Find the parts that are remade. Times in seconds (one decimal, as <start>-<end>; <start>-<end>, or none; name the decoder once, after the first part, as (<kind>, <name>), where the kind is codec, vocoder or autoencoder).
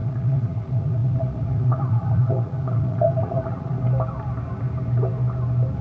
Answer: 0.0-3.7 (vocoder, Vocos)